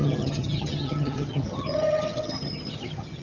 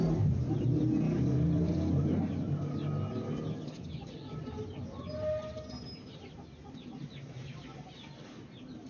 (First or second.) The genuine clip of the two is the second